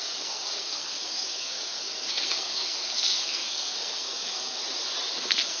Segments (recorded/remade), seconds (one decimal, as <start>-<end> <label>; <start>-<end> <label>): 0.0-4.6 remade; 4.6-5.1 recorded; 5.1-5.6 remade